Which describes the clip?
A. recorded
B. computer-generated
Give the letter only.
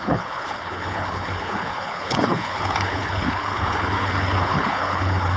B